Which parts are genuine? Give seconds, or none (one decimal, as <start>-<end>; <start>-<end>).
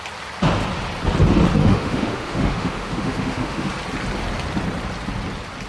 0.0-1.6; 3.7-5.7